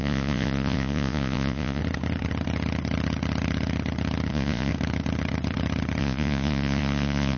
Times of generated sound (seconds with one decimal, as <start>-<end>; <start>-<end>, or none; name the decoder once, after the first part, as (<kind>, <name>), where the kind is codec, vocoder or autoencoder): 0.0-1.8 (vocoder, Vocos); 4.3-4.7; 6.0-7.4